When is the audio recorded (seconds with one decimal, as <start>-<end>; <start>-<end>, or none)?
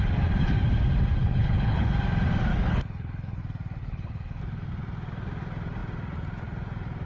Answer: 0.0-1.2; 1.9-2.5; 3.4-3.8; 4.4-7.1